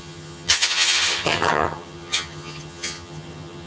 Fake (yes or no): yes